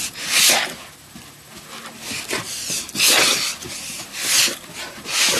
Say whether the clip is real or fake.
real